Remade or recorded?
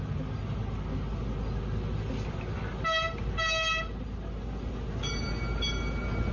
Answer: recorded